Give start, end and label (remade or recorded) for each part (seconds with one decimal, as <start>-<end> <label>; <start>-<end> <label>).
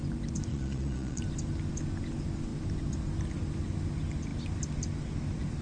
0.0-0.5 recorded; 0.5-1.2 remade; 1.2-5.6 recorded